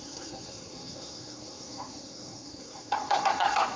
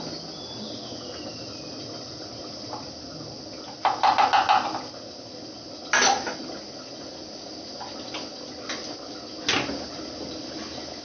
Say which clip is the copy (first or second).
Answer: first